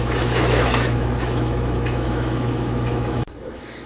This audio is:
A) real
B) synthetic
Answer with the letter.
B